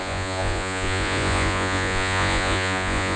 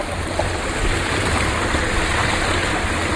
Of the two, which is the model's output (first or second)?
first